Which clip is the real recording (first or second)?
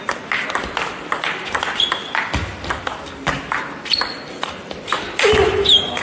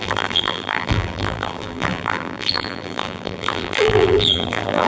first